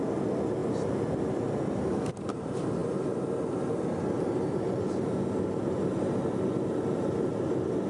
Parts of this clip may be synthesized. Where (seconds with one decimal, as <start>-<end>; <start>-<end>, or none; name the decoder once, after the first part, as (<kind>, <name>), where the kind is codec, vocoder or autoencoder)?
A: none